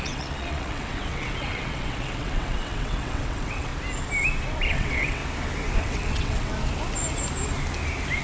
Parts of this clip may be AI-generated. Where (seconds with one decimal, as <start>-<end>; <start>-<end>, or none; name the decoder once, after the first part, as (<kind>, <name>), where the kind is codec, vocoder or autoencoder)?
0.0-3.7 (vocoder, WaveNeXt); 4.7-5.2; 5.8-6.5

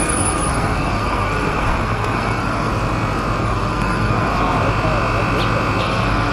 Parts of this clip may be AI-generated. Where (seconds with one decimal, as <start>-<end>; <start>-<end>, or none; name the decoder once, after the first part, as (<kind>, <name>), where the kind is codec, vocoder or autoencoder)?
0.0-2.7 (codec, SNAC); 3.4-4.3; 5.8-6.3

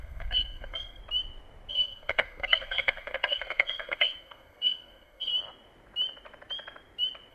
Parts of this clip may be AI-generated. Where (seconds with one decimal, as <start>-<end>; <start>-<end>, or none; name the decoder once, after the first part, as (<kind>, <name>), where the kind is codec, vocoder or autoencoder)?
0.0-1.0 (codec, SNAC); 1.7-5.3

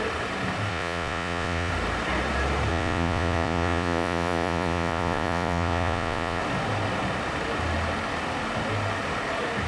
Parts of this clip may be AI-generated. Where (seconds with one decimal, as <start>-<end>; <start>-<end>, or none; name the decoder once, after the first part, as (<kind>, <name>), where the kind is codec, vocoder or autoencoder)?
0.7-1.7 (vocoder, Vocos); 2.7-6.4

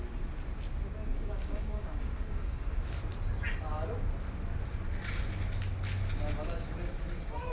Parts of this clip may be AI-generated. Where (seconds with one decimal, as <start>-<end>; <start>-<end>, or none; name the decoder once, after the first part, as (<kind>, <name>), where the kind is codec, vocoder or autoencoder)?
1.1-2.6 (codec, DAC)